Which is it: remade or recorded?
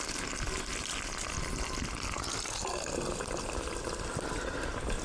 recorded